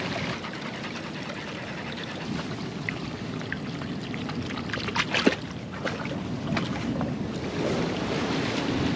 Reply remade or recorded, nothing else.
recorded